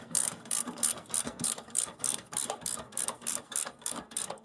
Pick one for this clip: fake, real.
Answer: fake